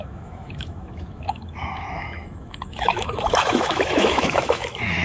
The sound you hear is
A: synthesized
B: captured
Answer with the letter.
A